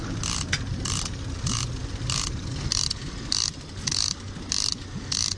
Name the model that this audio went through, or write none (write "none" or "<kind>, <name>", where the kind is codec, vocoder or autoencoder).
none